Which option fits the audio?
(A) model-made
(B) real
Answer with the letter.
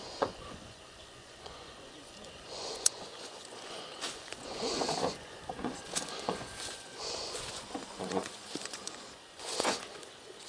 A